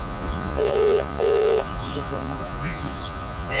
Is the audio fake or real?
fake